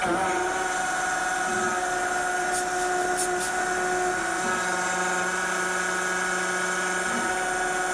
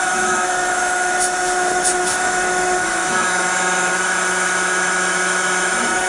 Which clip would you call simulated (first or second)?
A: second